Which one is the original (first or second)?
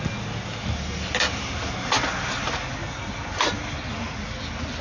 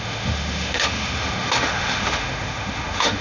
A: first